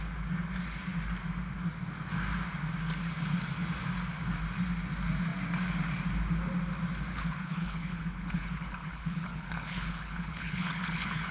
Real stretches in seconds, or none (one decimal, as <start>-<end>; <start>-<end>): 0.0-7.1

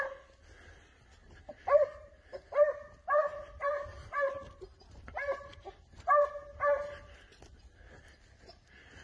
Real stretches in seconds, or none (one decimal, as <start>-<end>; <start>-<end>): 0.0-1.2; 2.3-3.2; 6.6-9.0

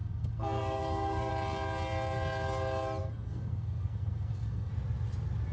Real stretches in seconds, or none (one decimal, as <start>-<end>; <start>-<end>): 1.3-3.0; 4.7-5.5